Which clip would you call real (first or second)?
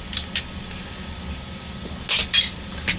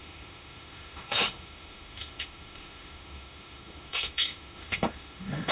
first